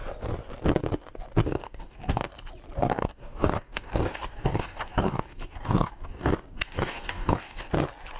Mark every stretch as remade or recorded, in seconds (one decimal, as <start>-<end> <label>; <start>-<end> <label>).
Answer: 0.0-1.4 recorded; 1.4-2.3 remade; 2.3-2.8 recorded; 2.8-7.7 remade; 7.7-8.2 recorded